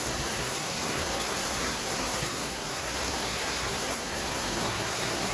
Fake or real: fake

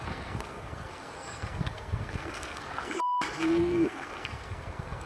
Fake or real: fake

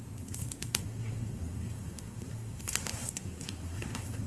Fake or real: fake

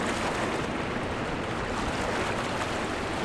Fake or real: real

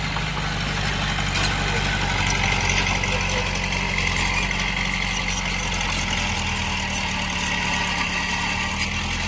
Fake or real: real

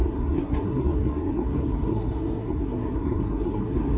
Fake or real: fake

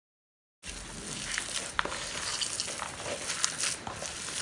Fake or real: real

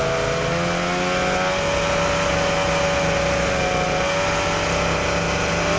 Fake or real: real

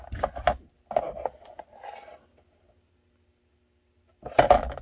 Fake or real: real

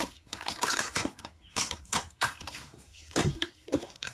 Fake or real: fake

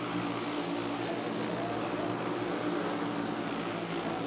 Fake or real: real